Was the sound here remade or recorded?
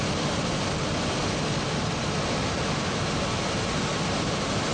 recorded